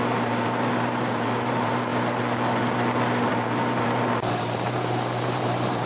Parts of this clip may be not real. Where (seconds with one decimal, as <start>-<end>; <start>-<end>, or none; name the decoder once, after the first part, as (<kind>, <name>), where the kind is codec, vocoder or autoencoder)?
0.0-1.9 (vocoder, BigVGAN v2); 3.3-5.9